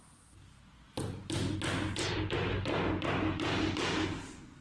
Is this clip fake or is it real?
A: real